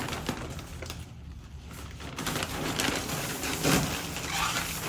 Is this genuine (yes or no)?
yes